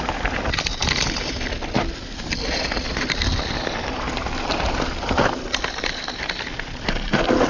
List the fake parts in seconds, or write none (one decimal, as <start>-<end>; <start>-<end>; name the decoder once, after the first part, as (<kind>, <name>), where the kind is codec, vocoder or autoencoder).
none